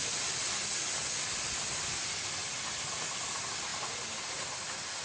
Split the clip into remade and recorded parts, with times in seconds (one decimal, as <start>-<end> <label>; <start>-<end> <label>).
0.0-5.0 recorded